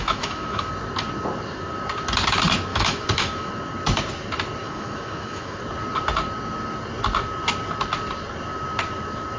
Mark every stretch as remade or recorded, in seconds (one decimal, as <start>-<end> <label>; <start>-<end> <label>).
0.0-0.7 remade; 0.7-2.7 recorded; 2.7-3.5 remade; 3.5-4.6 recorded; 4.6-5.6 remade; 5.6-9.4 recorded